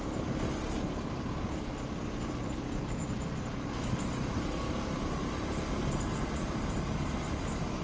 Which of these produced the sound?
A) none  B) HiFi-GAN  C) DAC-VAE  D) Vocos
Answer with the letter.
A